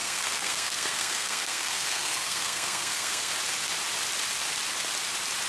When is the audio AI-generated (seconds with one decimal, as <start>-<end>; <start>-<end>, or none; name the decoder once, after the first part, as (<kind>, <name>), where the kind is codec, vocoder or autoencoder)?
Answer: 0.0-3.3 (codec, SNAC)